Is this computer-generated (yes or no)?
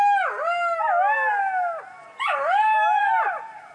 no